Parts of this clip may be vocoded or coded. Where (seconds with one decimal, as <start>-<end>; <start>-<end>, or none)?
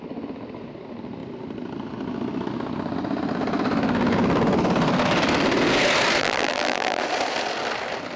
6.2-7.0